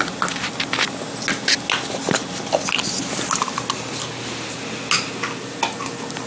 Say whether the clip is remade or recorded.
recorded